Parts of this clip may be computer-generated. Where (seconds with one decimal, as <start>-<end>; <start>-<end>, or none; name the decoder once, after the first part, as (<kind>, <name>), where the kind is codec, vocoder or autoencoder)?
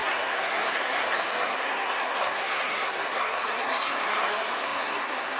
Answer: 0.0-5.4 (codec, SNAC)